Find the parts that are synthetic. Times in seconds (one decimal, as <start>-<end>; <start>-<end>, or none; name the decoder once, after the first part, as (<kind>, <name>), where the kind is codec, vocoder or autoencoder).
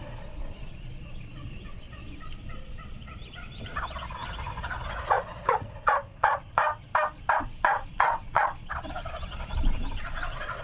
0.0-6.6 (vocoder, Vocos); 7.4-10.6